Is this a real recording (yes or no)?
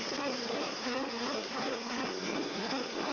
no